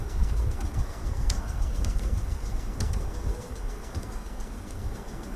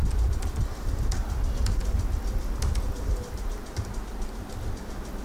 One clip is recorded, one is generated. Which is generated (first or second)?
first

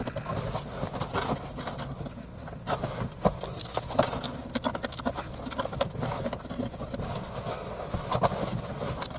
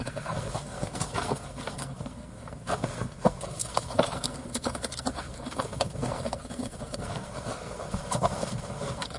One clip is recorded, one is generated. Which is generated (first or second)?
second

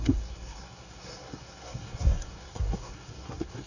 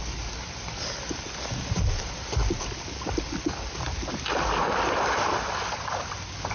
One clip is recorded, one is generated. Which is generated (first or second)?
first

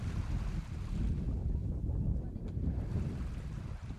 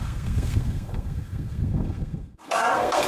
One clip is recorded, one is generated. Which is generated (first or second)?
second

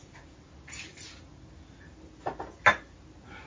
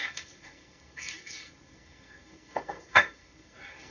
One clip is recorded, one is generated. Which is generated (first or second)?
second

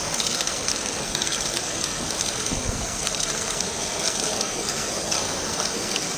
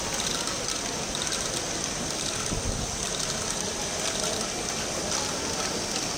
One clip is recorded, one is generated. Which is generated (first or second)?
first